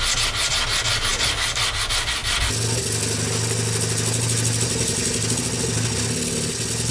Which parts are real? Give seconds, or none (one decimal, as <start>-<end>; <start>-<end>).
0.0-6.9